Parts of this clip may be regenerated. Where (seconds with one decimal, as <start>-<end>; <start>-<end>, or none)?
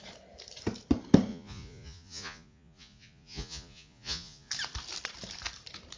1.3-4.5